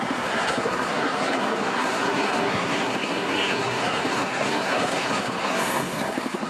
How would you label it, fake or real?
fake